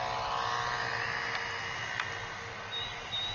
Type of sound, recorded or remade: recorded